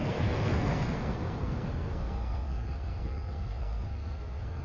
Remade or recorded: remade